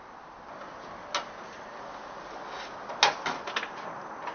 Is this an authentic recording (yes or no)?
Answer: yes